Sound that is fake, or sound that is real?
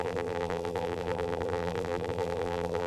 fake